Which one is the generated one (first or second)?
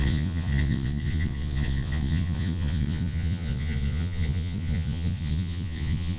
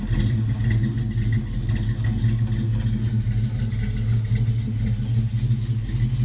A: first